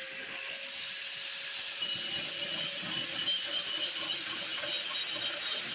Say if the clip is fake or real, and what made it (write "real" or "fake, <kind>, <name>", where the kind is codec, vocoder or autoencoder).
real